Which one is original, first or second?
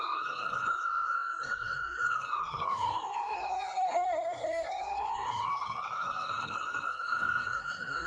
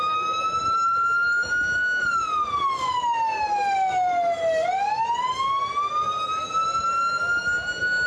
second